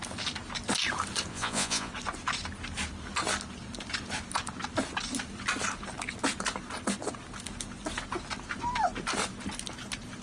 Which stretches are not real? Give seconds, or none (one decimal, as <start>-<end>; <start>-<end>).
1.3-1.9